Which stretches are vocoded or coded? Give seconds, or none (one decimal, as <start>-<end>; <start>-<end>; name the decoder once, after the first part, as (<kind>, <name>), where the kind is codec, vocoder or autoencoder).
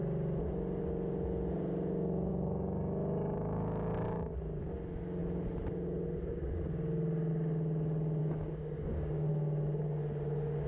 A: 2.3-4.6 (codec, DAC); 8.2-9.3